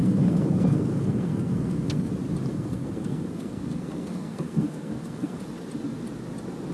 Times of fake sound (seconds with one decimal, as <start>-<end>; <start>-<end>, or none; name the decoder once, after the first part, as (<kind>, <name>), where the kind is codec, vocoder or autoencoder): 0.0-2.1 (codec, SNAC); 2.5-5.4